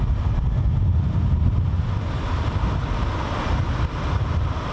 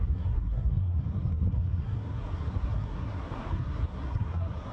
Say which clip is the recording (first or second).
first